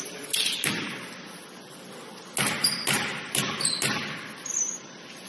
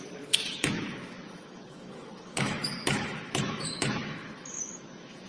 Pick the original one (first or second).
first